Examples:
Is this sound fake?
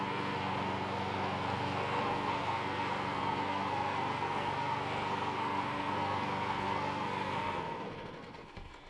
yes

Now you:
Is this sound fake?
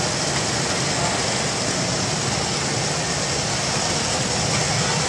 no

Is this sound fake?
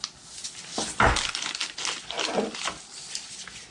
no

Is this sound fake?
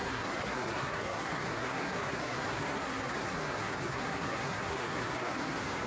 yes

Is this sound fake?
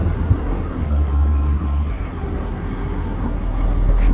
yes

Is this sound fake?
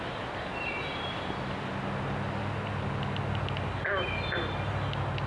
no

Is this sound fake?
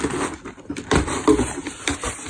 no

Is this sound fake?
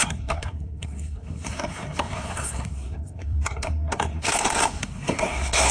yes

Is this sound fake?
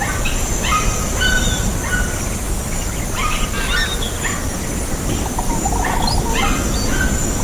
no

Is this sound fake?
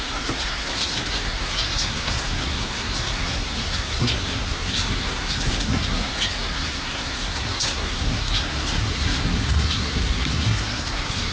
yes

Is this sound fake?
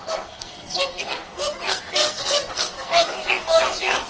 yes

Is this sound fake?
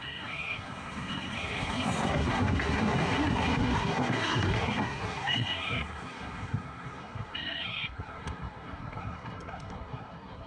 yes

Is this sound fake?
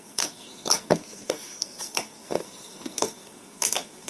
yes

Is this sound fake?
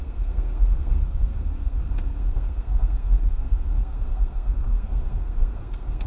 yes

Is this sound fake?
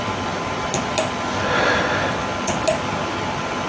no